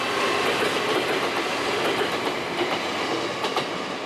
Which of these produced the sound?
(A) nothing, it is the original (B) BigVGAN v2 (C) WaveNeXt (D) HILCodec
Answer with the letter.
A